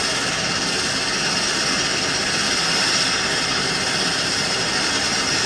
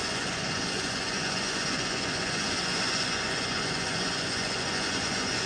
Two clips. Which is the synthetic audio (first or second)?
second